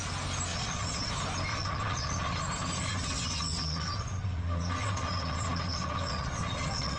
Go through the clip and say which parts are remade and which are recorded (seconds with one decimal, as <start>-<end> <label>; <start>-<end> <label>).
0.0-0.5 recorded; 0.5-1.1 remade; 1.1-1.5 recorded; 1.5-2.4 remade; 2.4-2.8 recorded; 2.8-7.0 remade